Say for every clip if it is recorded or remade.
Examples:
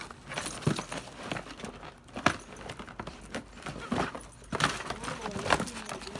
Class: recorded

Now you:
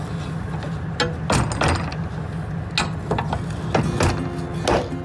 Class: recorded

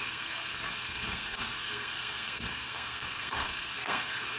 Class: remade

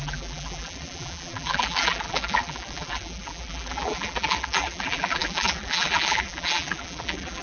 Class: remade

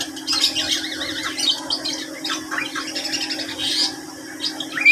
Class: recorded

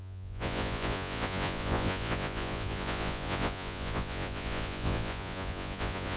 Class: remade